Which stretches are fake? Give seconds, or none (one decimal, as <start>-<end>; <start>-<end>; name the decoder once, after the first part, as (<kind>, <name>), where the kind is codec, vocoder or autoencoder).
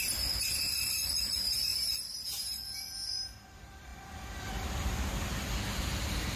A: 0.0-1.7 (vocoder, BigVGAN v2); 2.8-6.4